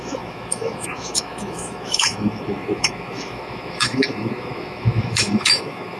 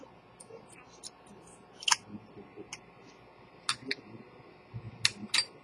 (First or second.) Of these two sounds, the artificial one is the first